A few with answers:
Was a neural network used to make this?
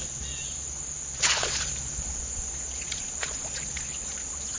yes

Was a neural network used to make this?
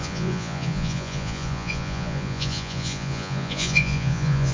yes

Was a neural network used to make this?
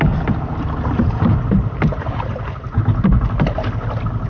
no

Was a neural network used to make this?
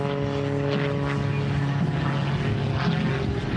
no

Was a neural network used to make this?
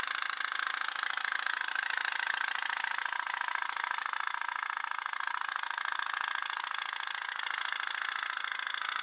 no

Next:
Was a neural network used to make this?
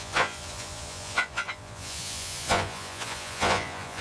yes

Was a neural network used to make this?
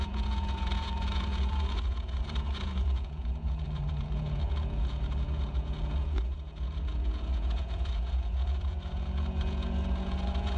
yes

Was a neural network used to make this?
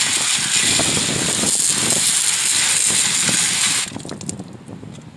no